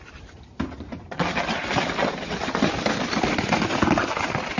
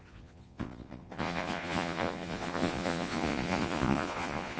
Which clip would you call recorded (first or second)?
first